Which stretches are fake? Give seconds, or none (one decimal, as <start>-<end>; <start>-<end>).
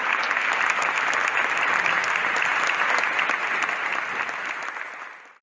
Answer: none